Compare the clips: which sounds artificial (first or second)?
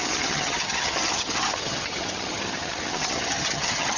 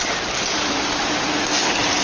first